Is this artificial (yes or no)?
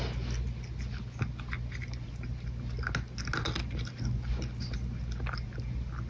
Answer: no